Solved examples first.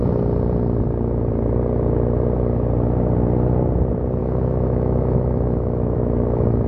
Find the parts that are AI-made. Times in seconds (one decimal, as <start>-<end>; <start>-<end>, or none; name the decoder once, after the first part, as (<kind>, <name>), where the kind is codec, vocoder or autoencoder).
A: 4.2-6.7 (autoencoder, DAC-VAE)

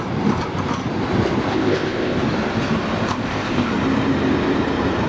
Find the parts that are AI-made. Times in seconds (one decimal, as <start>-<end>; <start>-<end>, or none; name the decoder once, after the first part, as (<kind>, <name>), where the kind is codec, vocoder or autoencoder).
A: 1.5-2.2 (codec, ZipCodec); 3.1-3.7

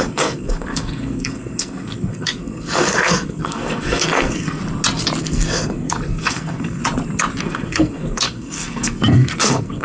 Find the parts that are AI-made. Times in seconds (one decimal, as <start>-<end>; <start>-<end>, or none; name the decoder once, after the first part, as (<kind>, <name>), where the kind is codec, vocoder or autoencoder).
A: 0.0-4.6 (codec, SNAC); 5.2-6.8; 7.4-9.8

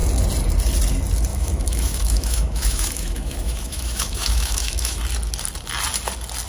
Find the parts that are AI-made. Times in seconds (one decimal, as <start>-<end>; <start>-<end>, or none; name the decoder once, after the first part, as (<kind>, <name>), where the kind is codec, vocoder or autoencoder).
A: 1.3-5.0 (autoencoder, DAC-VAE)